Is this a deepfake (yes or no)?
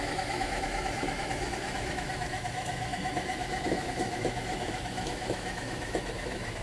yes